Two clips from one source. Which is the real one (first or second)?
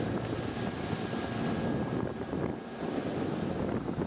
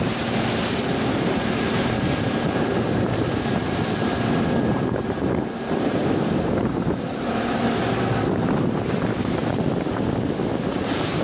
first